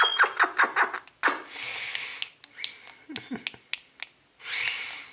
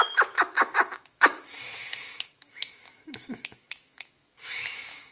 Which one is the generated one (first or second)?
second